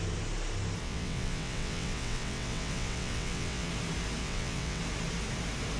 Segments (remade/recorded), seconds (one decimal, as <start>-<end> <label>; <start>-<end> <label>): 0.0-0.8 recorded; 0.8-3.7 remade; 3.7-4.2 recorded; 4.2-4.8 remade; 4.8-5.8 recorded